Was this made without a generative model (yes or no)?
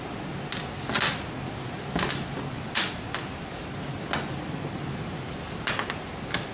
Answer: yes